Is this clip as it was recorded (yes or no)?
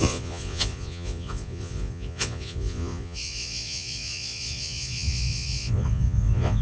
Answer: no